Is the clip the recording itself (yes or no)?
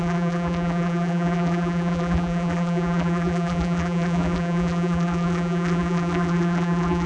no